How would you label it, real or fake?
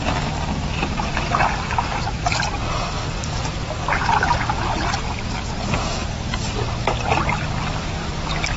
real